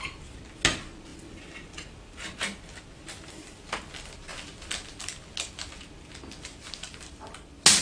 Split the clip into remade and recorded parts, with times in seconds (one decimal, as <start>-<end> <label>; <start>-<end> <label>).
0.0-7.8 recorded